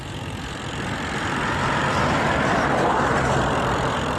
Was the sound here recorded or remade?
remade